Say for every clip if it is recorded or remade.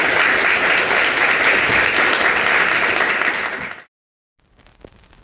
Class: recorded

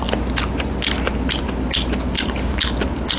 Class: recorded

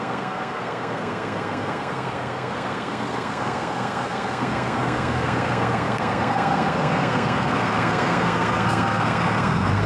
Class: remade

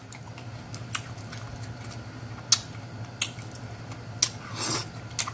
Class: recorded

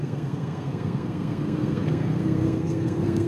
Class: remade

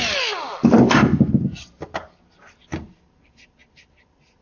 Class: recorded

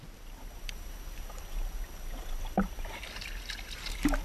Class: recorded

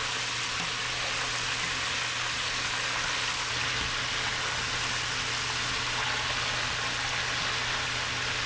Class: recorded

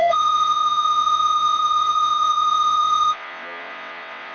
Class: remade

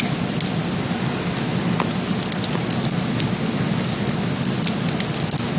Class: recorded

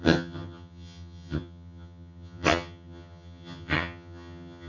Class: remade